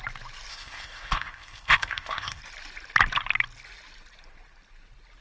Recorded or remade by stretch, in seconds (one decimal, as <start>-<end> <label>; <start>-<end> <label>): 0.0-0.5 recorded; 0.5-2.4 remade; 2.4-5.2 recorded